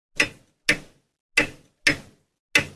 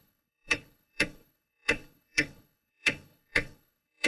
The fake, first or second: second